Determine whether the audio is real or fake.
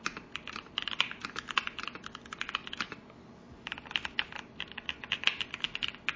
real